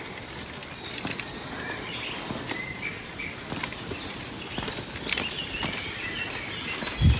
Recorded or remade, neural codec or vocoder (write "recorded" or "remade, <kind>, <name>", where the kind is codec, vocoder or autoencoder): recorded